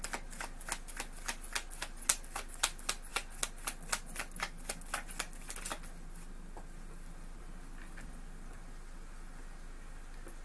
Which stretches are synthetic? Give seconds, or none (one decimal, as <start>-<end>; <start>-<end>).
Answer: none